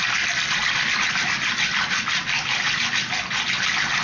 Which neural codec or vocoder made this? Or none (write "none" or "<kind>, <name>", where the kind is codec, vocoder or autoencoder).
none